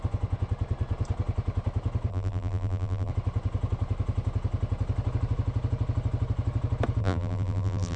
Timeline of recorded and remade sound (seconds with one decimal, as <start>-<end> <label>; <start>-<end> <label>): 0.0-2.1 recorded; 2.1-3.1 remade; 3.1-7.0 recorded; 7.0-8.0 remade